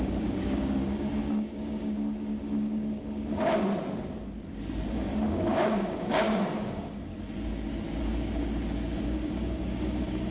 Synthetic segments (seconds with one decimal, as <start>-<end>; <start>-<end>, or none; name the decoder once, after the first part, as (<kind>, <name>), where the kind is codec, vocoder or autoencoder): 0.0-3.7 (codec, DAC); 4.9-7.1; 8.0-10.3